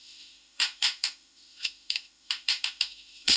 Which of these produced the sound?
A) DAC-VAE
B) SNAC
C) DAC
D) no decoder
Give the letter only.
A